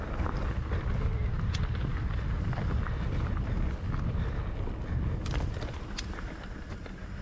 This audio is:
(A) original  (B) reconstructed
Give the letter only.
A